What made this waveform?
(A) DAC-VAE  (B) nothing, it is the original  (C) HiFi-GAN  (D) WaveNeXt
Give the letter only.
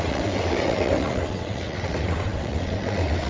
D